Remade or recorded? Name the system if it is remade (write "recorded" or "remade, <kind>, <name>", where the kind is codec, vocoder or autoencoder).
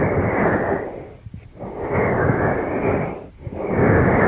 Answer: recorded